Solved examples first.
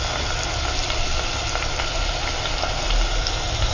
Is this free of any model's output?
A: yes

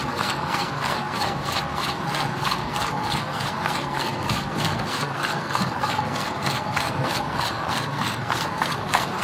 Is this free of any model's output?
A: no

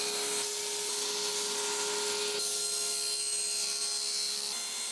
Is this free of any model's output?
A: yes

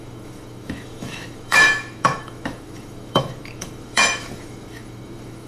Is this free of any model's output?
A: no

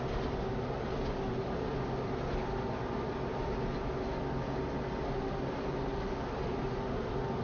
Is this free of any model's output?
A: yes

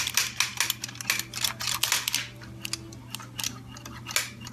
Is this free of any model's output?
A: yes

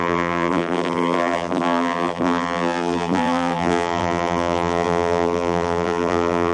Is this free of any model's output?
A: no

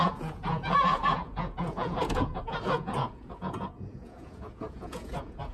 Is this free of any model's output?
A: no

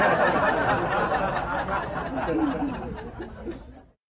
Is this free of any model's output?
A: yes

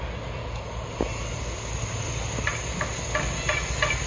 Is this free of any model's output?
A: yes